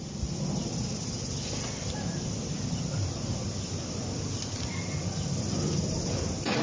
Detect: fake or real real